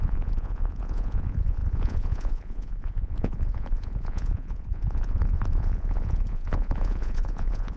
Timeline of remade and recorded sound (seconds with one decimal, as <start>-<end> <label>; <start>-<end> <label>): 0.0-7.8 remade